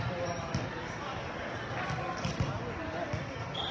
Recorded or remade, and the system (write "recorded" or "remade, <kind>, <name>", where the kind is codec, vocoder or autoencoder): recorded